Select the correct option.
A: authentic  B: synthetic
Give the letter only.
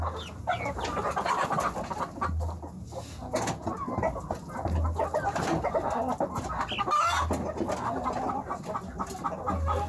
A